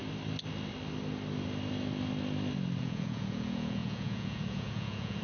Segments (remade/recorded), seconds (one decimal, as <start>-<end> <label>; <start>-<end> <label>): 0.0-2.8 recorded; 2.8-5.2 remade